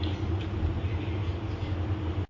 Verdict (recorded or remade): recorded